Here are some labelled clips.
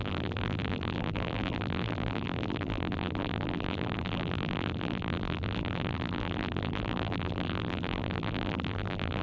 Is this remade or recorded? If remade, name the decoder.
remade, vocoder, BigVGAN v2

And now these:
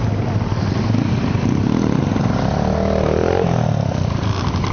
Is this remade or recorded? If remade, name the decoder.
recorded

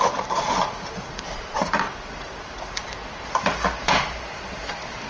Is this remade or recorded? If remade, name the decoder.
remade, vocoder, BigVGAN v2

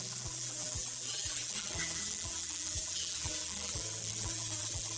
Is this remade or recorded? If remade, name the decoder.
remade, vocoder, BigVGAN v2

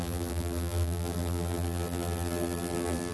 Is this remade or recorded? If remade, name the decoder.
remade, vocoder, BigVGAN v2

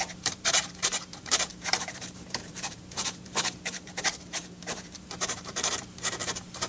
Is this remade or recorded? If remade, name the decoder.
remade, vocoder, BigVGAN v2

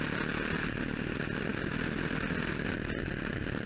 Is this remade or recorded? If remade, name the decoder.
recorded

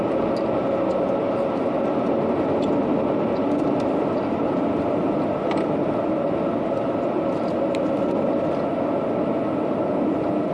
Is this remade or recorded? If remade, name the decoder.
recorded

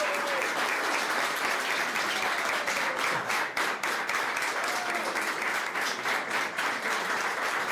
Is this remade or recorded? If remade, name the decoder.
recorded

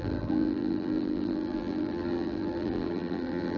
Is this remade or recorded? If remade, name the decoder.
remade, vocoder, BigVGAN v2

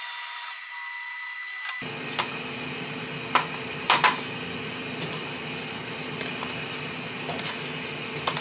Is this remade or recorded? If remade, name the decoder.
recorded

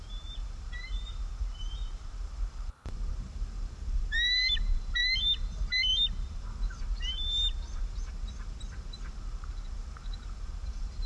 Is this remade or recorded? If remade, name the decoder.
remade, vocoder, BigVGAN v2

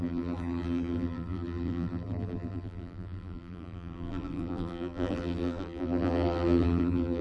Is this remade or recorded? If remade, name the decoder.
remade, vocoder, BigVGAN v2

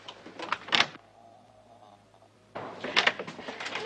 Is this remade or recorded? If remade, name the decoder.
remade, vocoder, BigVGAN v2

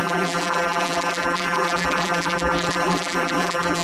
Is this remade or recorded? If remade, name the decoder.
remade, vocoder, BigVGAN v2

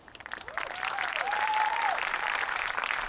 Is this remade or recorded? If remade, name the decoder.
remade, vocoder, BigVGAN v2